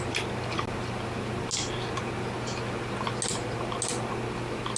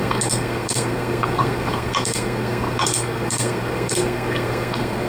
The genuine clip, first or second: first